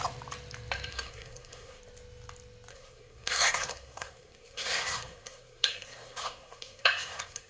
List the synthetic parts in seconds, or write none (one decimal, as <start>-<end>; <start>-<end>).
0.9-1.8; 2.7-7.5